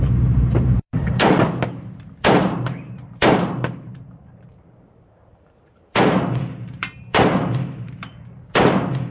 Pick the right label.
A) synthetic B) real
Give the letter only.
A